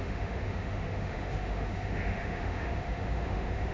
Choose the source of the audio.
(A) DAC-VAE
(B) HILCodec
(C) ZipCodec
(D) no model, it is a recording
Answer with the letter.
A